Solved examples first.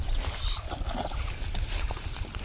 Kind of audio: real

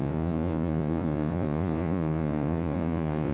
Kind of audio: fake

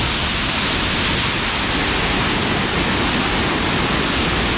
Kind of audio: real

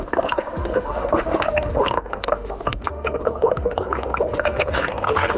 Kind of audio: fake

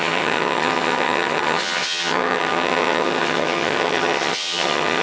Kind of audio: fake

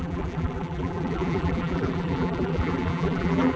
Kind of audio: fake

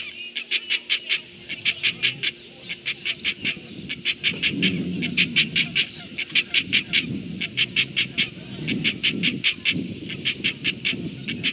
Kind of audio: real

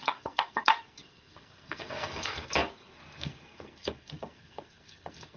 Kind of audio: fake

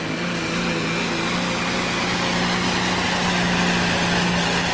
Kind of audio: real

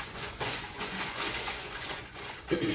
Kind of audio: fake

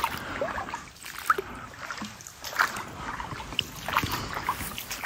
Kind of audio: real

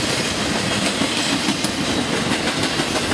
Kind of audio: real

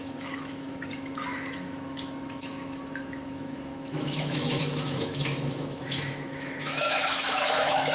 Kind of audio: fake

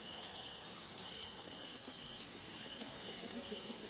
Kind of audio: fake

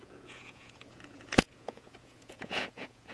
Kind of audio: fake